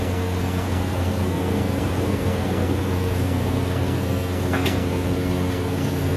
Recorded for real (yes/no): no